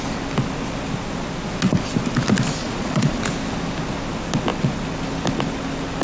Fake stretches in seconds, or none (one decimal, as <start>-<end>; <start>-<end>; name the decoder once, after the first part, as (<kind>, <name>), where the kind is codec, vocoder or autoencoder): 2.6-3.2 (vocoder, Vocos)